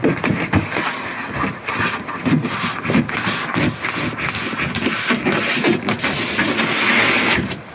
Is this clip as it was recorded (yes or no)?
yes